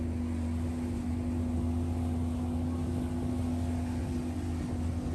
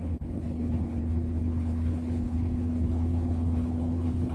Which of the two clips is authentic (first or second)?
first